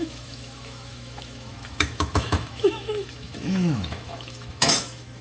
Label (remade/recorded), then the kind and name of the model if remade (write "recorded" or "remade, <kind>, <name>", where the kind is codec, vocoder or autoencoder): remade, autoencoder, DAC-VAE